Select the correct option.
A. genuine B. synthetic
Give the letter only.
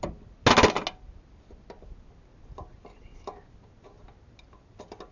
A